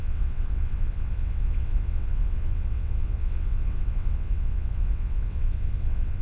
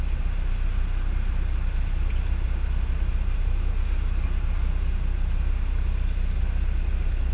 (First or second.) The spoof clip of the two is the first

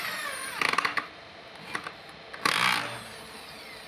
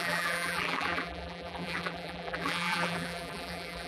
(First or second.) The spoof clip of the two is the second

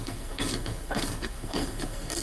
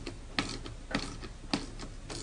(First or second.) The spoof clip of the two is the first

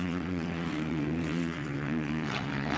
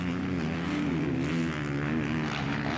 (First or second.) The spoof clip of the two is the first